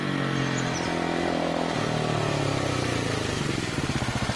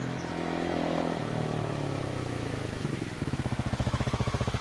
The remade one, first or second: second